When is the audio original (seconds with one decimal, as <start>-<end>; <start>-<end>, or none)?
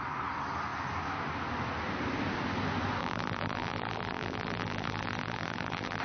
0.0-3.0